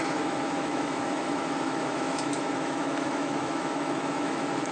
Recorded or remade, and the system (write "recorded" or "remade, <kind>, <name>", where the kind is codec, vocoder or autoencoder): remade, autoencoder, DAC-VAE